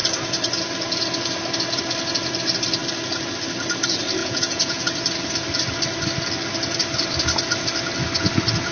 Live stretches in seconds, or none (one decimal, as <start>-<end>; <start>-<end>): 0.0-4.2; 4.8-8.7